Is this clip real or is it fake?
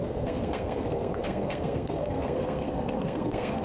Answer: fake